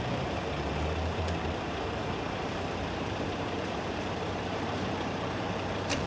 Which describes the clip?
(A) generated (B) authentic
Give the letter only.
A